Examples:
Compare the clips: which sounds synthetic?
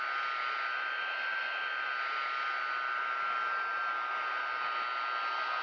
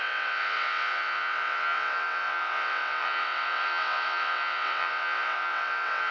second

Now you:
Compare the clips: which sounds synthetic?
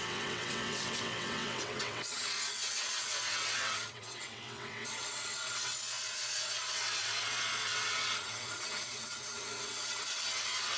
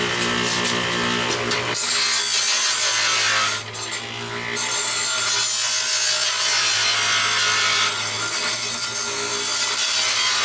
first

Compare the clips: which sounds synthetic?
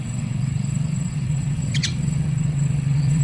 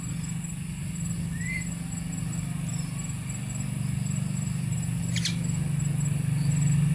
first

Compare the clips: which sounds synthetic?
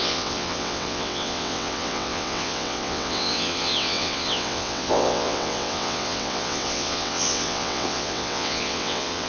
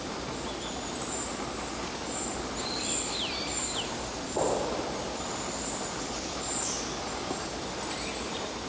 first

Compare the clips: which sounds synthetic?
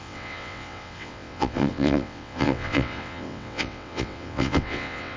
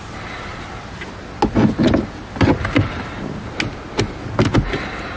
first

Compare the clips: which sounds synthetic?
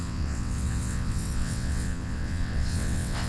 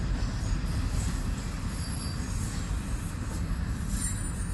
first